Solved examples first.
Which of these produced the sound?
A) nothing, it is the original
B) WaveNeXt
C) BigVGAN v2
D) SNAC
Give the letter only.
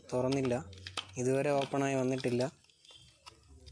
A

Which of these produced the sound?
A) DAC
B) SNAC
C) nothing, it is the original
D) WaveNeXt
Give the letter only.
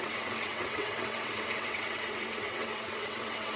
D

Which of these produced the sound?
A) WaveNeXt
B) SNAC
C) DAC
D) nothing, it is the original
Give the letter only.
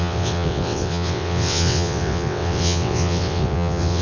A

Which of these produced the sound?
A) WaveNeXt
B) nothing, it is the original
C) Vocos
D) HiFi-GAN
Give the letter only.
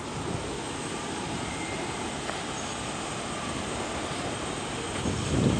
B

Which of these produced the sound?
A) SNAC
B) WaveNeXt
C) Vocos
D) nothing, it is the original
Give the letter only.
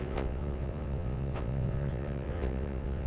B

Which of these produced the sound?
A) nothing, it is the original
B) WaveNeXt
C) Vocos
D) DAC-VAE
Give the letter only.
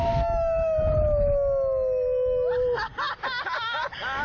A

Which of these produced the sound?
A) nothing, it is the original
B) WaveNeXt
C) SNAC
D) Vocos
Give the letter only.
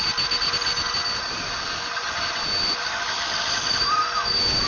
A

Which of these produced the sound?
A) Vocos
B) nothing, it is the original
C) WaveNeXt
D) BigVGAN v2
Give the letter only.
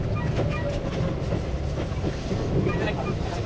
B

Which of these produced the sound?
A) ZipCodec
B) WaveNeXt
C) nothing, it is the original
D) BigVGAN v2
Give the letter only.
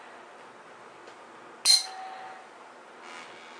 C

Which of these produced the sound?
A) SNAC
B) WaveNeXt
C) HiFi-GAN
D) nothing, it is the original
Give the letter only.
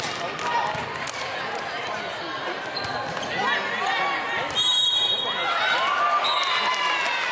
D